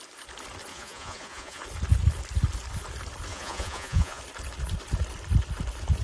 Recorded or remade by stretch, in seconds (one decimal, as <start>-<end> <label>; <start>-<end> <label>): 0.0-0.7 recorded; 0.7-1.6 remade; 1.6-3.3 recorded; 3.3-4.2 remade; 4.2-6.0 recorded